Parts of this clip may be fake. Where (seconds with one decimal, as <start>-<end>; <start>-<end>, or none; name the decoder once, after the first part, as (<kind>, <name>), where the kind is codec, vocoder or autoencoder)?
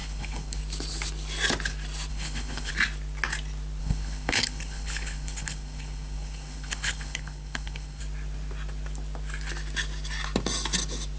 0.0-0.6 (codec, HILCodec); 2.1-2.7; 3.8-8.0